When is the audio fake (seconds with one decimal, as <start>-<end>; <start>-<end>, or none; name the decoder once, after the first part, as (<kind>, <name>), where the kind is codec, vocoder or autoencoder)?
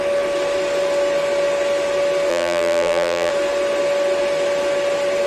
2.3-3.3 (vocoder, BigVGAN v2)